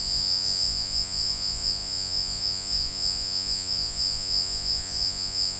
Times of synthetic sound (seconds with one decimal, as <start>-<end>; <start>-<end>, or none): 0.0-5.6